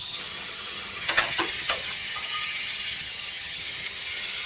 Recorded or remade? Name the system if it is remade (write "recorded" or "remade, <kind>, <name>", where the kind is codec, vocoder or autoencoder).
remade, vocoder, HiFi-GAN